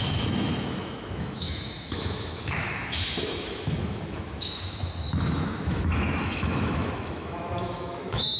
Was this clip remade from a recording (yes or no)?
yes